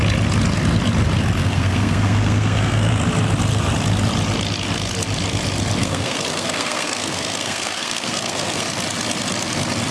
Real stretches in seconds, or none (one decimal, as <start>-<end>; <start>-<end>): 0.0-1.4; 2.9-5.8; 8.7-9.9